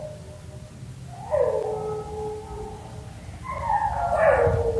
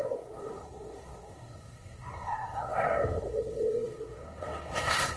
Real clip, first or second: first